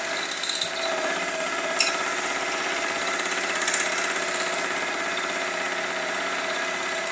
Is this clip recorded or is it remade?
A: recorded